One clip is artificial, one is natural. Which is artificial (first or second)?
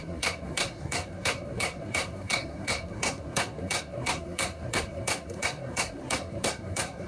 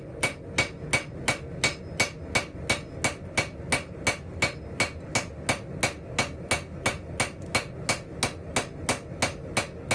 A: first